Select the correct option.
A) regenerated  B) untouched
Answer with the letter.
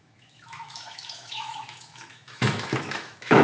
A